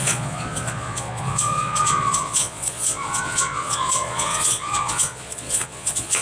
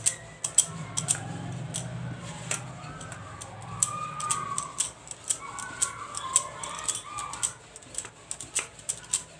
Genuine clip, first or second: second